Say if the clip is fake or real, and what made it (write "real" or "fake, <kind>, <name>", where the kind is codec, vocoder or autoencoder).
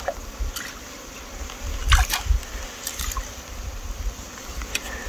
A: real